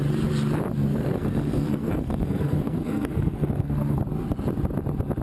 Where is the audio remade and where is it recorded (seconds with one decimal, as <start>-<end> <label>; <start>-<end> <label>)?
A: 0.0-0.9 recorded; 0.9-4.0 remade; 4.0-5.2 recorded